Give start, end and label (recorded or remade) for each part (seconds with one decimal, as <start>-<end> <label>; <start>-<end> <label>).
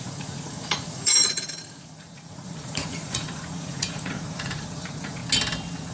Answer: 0.0-5.2 remade; 5.2-5.9 recorded